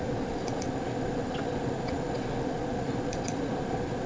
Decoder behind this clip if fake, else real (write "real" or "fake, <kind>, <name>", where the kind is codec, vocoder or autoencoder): fake, vocoder, Vocos